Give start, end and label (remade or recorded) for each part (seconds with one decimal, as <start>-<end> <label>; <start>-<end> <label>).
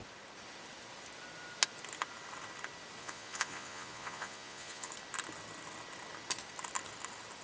0.0-3.0 recorded; 3.0-4.9 remade; 4.9-7.4 recorded